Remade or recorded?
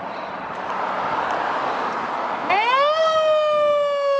recorded